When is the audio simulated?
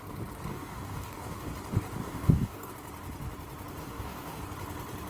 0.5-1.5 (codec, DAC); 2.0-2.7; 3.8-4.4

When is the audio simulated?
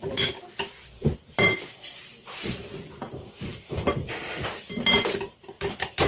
none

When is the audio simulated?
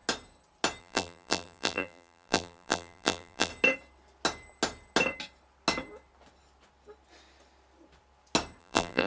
0.8-3.5 (vocoder, BigVGAN v2); 8.6-9.1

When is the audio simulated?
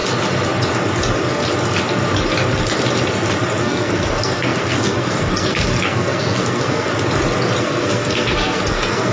3.6-6.9 (codec, SNAC); 7.6-9.1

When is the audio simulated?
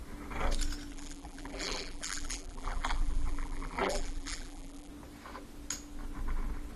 0.9-4.9 (vocoder, BigVGAN v2)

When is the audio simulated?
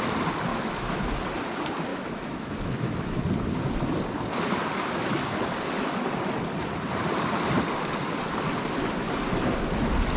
0.5-1.1 (autoencoder, DAC-VAE); 1.9-3.2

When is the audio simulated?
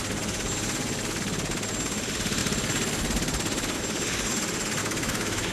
4.8-5.5 (autoencoder, DAC-VAE)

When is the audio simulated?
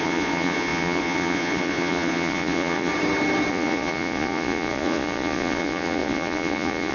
0.0-2.9 (vocoder, Vocos); 3.5-6.9